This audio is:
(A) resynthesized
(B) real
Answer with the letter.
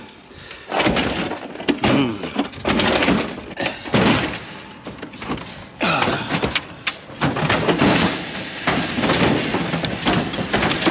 B